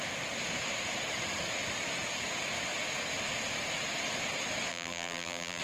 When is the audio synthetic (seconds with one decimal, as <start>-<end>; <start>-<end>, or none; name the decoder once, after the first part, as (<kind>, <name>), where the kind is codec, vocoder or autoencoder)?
4.7-5.6 (vocoder, BigVGAN v2)